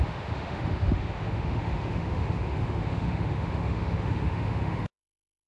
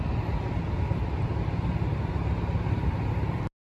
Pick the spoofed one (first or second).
first